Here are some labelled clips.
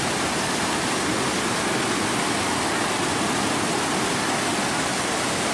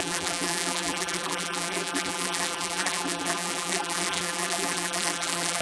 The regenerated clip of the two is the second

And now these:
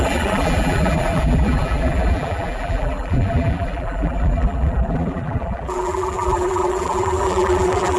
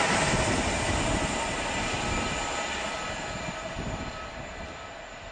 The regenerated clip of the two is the first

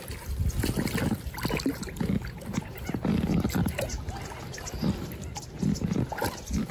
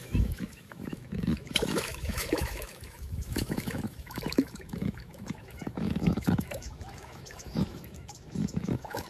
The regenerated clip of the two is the second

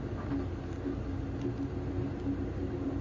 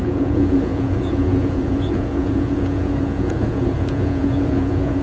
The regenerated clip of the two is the second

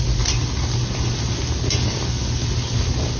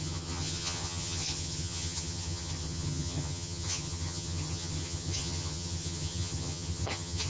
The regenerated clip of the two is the second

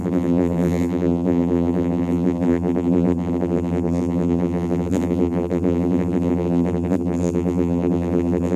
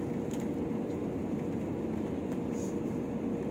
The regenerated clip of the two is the first